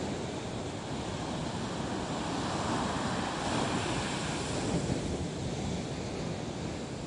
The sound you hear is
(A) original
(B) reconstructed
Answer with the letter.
A